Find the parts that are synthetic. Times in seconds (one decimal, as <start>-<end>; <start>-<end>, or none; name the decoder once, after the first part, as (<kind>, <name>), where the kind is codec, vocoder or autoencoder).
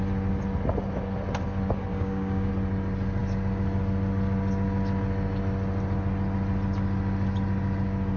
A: 1.9-2.5 (codec, DAC)